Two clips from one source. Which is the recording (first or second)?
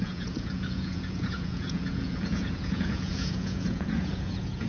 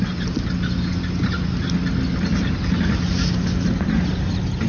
second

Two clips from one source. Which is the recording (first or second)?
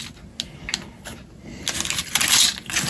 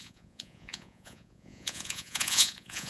first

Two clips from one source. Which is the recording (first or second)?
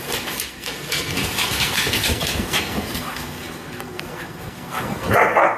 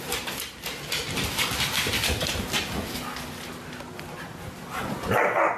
second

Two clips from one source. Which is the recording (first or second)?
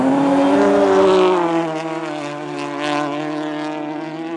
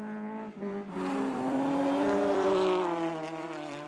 first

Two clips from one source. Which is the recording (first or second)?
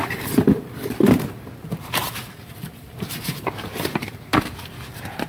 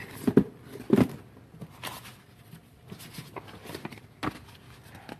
second